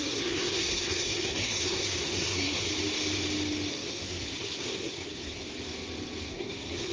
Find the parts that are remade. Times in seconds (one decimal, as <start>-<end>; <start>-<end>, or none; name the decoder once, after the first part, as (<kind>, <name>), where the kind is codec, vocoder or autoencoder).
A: 0.0-2.7 (codec, SNAC); 3.7-5.4; 6.3-6.9